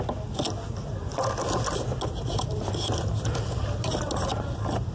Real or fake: real